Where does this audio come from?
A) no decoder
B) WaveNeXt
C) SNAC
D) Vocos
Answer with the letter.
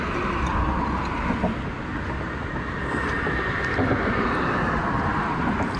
A